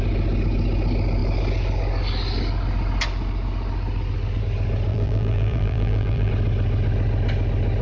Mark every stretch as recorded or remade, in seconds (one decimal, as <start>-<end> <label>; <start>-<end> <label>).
0.0-4.9 recorded; 4.9-6.3 remade; 6.3-7.8 recorded